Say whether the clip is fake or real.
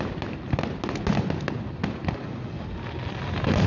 real